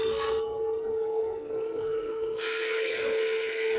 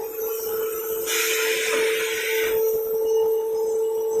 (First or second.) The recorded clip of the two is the second